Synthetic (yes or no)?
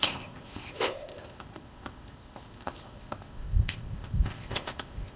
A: yes